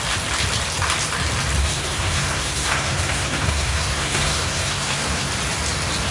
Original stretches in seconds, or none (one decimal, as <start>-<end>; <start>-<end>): 0.0-1.6; 5.3-6.1